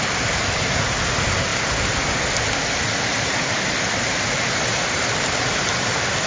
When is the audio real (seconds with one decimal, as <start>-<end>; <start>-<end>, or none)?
0.0-6.3